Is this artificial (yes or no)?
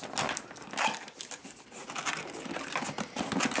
no